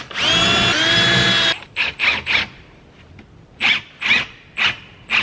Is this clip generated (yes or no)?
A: no